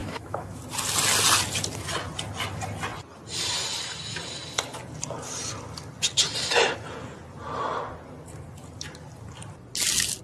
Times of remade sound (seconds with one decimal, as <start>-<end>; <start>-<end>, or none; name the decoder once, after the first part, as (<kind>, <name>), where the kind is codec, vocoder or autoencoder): 0.0-0.6 (autoencoder, DAC-VAE)